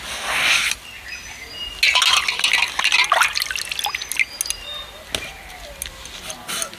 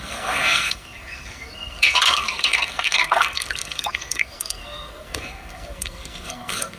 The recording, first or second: first